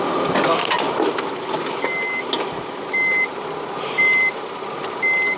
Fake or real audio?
real